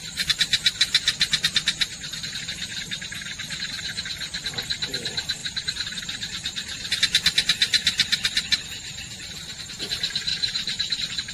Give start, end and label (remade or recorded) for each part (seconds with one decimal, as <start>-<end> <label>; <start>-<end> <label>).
0.0-5.4 recorded; 5.4-6.0 remade; 6.0-10.3 recorded; 10.3-11.3 remade